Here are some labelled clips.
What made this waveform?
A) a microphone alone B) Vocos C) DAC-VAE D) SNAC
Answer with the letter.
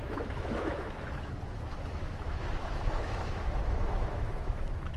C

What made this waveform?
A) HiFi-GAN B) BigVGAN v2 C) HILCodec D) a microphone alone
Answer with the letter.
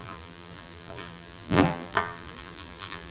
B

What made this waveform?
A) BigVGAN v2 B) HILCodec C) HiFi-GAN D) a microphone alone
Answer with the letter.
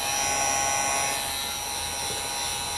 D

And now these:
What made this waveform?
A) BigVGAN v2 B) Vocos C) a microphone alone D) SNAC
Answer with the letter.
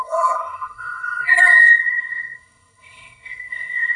D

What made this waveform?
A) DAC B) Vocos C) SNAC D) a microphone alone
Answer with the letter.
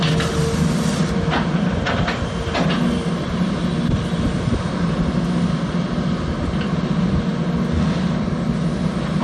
D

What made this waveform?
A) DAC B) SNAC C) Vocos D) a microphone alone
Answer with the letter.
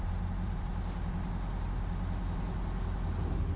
D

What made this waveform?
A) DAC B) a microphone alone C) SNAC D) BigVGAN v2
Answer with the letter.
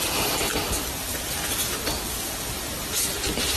B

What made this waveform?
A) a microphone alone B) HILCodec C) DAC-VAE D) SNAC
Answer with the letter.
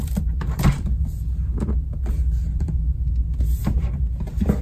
A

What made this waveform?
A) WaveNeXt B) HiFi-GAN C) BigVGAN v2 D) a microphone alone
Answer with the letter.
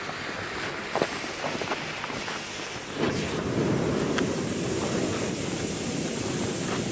D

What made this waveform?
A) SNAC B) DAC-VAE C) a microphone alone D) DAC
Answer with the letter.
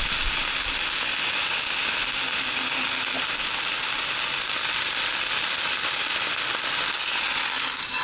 C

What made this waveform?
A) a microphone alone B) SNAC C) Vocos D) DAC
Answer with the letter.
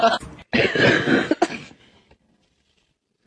A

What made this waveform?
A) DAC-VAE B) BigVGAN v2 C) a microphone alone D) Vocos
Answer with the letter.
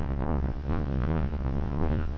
D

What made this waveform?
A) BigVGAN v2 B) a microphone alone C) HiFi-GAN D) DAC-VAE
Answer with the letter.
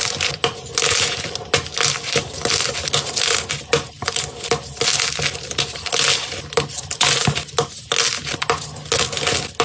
B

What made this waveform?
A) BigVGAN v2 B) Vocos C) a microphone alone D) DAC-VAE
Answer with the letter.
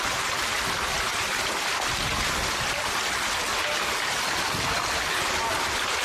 C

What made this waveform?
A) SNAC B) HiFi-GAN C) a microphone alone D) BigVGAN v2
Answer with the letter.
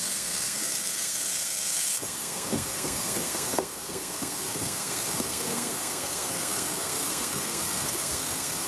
A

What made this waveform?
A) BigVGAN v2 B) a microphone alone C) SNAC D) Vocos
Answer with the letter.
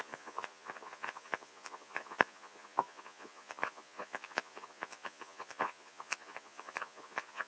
D